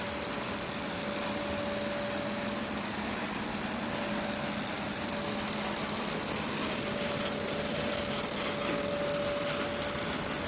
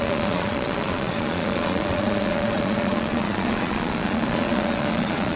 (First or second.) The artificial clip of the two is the second